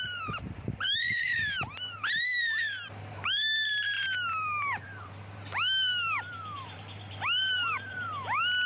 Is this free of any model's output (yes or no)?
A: no